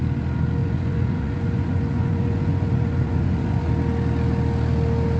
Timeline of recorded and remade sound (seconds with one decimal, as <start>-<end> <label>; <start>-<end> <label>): 0.0-0.6 recorded; 0.6-3.7 remade; 3.7-5.2 recorded